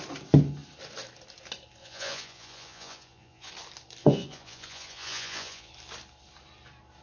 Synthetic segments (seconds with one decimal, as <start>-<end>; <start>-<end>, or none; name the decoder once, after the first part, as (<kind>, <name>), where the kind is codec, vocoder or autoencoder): 1.8-3.5 (vocoder, Vocos); 4.0-5.7